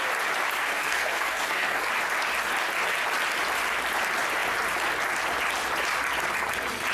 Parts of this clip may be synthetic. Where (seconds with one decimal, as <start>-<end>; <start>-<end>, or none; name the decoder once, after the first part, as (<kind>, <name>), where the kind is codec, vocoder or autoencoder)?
0.6-1.9 (codec, SNAC)